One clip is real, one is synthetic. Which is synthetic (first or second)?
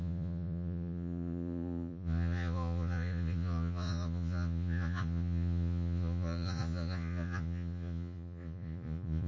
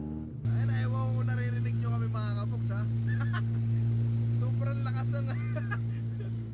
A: first